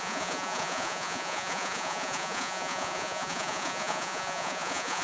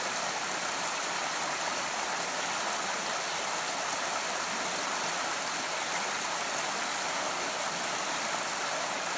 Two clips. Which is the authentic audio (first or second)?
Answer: second